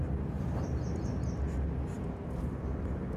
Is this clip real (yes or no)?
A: yes